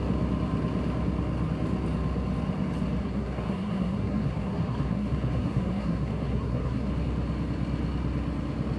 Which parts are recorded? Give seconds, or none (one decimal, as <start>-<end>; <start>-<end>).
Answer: 0.0-3.0; 6.9-8.8